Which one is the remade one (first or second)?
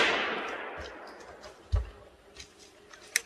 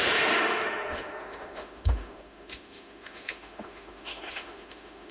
second